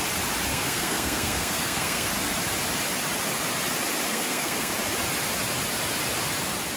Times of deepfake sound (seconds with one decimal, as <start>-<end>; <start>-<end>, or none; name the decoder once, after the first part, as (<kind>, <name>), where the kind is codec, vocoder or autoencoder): 0.5-2.1 (codec, SNAC); 4.1-4.7